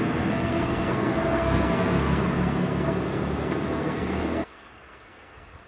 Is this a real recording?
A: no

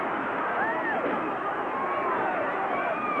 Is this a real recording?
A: yes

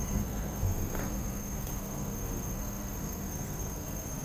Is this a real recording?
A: no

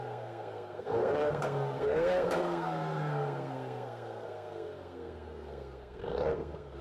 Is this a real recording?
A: no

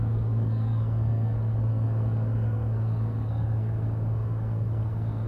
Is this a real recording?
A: no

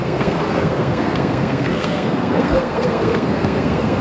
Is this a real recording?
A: no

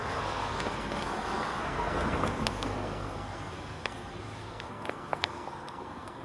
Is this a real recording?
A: no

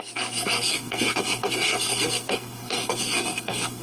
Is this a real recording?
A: no